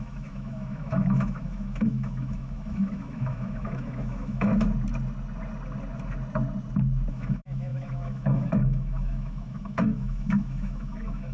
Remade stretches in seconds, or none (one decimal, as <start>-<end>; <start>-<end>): 0.0-4.5; 7.1-11.3